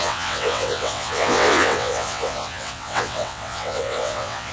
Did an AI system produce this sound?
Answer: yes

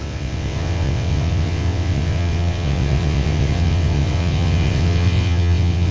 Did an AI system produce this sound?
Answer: yes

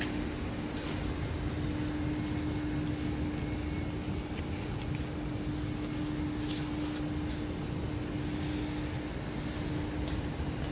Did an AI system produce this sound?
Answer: no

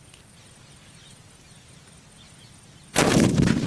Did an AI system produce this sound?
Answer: no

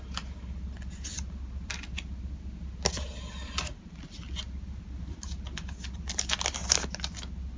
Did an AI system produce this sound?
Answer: no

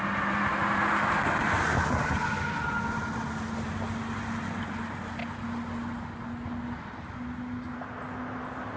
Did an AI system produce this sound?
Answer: no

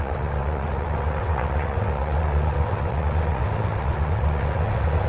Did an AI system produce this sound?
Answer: yes